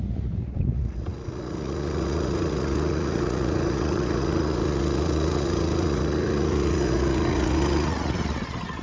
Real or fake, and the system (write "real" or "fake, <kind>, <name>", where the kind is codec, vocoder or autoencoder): fake, vocoder, Vocos